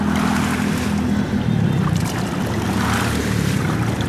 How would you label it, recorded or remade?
recorded